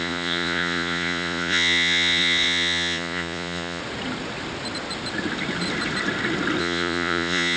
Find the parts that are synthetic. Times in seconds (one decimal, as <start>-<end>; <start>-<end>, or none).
0.0-3.8; 6.6-7.6